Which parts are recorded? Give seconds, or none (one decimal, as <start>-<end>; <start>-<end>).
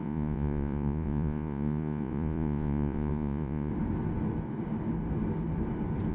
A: 3.7-6.1